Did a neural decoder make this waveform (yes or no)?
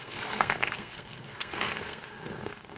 yes